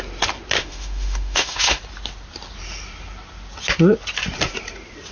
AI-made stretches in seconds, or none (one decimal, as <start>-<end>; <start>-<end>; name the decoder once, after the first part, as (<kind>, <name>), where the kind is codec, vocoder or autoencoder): 0.6-1.8 (autoencoder, DAC-VAE)